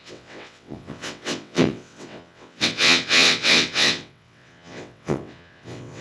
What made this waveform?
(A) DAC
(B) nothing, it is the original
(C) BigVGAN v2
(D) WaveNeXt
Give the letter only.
D